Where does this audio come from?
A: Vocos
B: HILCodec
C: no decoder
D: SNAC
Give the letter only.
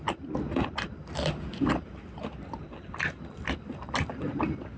C